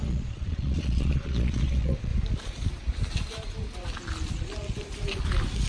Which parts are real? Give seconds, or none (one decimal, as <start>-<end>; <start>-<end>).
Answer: 2.1-5.7